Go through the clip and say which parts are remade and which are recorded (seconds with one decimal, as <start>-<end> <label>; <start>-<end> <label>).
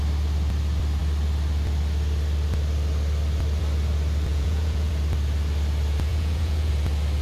0.0-4.3 recorded; 4.3-4.9 remade; 4.9-6.1 recorded; 6.1-6.7 remade; 6.7-7.2 recorded